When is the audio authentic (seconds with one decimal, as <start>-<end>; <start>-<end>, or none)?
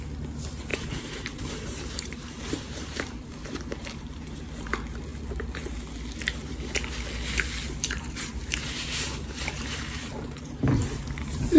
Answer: 0.0-0.7; 4.4-7.6